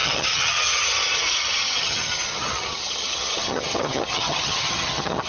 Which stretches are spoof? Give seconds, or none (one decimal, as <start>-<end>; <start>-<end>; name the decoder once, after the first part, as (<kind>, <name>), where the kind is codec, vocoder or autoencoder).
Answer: 0.0-5.3 (vocoder, HiFi-GAN)